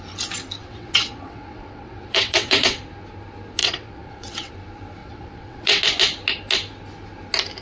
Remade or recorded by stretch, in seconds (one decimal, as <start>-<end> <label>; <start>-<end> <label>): 0.0-0.6 recorded; 0.6-2.8 remade; 2.8-3.6 recorded; 3.6-4.5 remade; 4.5-5.0 recorded; 5.0-5.8 remade; 5.8-7.6 recorded